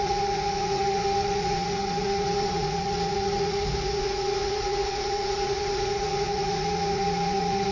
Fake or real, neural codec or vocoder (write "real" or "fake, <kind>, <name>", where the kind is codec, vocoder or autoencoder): fake, vocoder, Vocos